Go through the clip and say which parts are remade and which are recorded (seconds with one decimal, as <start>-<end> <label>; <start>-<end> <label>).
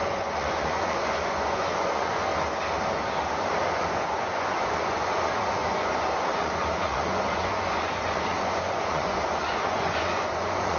0.0-2.3 remade; 2.3-3.7 recorded; 3.7-10.8 remade